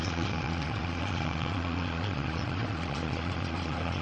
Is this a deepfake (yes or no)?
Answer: yes